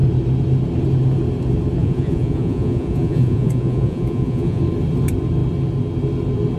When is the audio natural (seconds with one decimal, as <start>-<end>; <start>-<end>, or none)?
0.0-1.8; 4.6-6.6